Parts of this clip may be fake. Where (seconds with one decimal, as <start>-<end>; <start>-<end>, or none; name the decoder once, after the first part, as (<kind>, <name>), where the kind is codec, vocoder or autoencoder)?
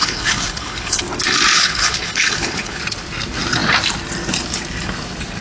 0.0-1.0 (codec, HILCodec); 1.5-2.8